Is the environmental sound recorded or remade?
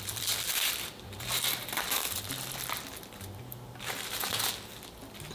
remade